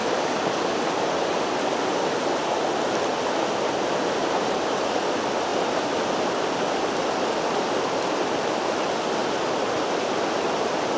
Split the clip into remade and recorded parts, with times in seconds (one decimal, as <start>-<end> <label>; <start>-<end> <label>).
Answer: 0.0-4.2 recorded; 4.2-5.0 remade; 5.0-11.0 recorded